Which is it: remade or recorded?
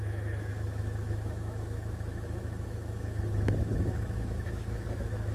remade